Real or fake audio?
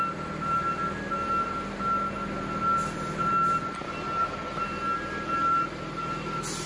real